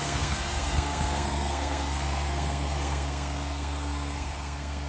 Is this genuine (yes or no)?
no